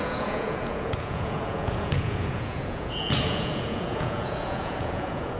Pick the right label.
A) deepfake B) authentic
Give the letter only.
A